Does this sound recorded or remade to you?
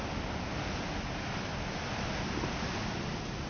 recorded